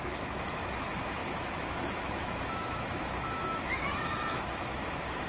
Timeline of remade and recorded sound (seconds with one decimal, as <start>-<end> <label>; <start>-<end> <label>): 0.0-5.3 remade